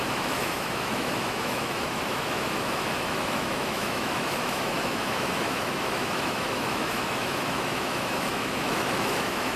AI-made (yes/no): yes